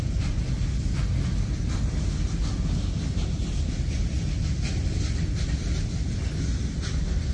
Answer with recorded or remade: recorded